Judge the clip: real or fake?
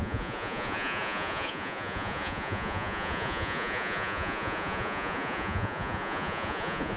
fake